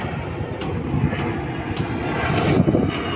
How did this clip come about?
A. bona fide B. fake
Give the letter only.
A